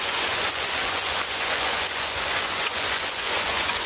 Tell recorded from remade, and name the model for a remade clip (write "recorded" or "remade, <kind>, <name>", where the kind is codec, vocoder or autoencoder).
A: remade, vocoder, Vocos